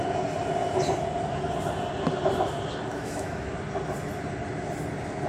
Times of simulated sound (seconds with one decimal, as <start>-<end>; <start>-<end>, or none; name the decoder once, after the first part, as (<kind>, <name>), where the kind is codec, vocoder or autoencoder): 2.9-3.5 (autoencoder, DAC-VAE)